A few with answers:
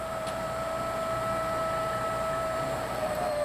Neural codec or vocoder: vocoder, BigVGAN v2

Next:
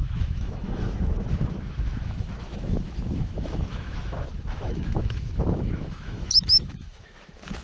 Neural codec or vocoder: autoencoder, DAC-VAE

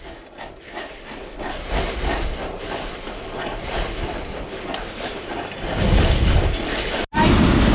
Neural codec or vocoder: none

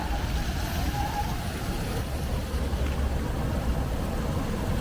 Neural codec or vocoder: none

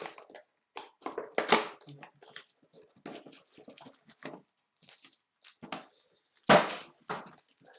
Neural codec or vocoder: none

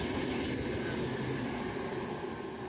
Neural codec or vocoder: none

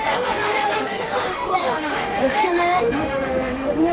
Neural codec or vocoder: autoencoder, DAC-VAE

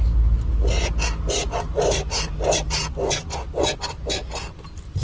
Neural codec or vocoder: none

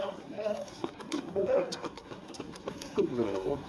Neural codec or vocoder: codec, SNAC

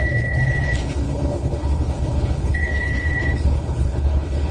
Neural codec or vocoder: codec, HILCodec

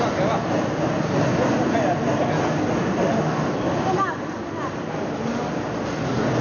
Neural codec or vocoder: none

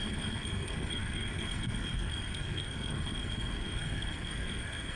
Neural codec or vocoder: codec, SNAC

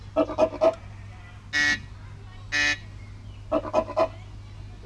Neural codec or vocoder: none